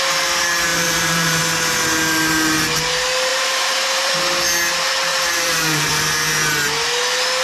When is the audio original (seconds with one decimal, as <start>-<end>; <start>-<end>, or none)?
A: 0.0-0.7; 1.4-3.3; 4.1-5.1; 5.9-7.4